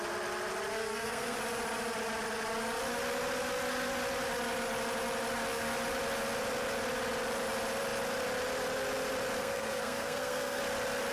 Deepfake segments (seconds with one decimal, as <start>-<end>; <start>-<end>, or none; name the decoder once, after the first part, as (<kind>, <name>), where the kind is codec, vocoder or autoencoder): 0.8-1.4 (codec, SNAC); 9.4-10.6